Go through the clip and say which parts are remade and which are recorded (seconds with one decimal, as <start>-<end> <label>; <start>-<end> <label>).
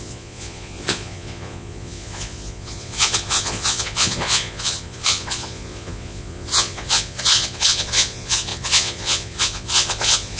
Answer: 0.0-10.4 remade